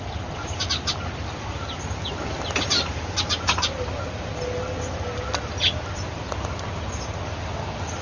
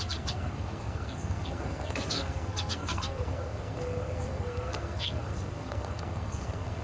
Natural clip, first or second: first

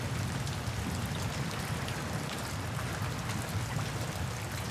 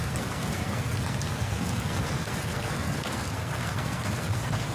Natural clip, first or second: first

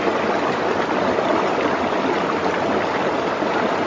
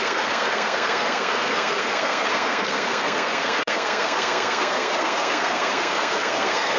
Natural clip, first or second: first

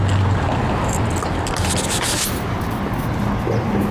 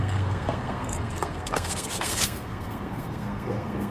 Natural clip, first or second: first